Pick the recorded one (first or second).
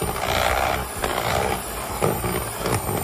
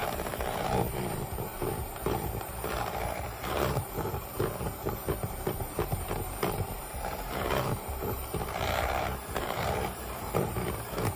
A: first